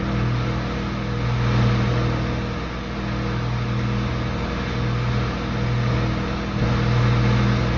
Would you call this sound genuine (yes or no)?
yes